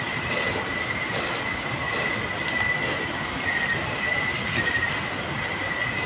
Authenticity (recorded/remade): recorded